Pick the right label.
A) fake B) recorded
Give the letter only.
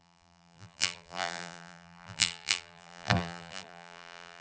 A